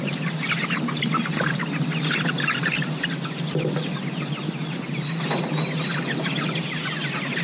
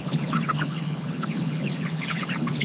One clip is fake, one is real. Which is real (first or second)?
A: first